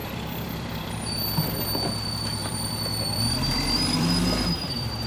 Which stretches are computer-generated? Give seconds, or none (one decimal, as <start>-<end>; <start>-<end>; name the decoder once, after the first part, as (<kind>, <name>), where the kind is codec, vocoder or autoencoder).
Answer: 0.0-0.9 (vocoder, BigVGAN v2); 2.4-5.1